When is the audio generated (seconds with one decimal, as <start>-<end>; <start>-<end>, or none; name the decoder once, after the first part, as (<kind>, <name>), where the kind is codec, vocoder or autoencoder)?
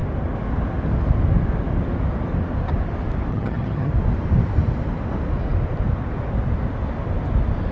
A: 3.3-3.9 (vocoder, HiFi-GAN)